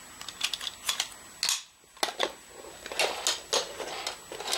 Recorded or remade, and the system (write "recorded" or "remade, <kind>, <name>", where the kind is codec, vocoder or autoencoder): recorded